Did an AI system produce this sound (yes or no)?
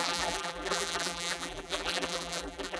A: yes